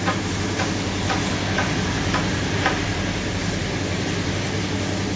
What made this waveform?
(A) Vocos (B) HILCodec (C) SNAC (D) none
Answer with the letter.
D